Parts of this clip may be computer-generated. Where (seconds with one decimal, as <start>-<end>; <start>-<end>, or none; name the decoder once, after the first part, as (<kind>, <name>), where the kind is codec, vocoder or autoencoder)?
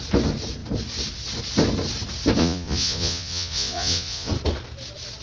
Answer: 2.4-4.3 (vocoder, Vocos)